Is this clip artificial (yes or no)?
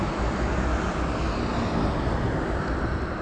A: no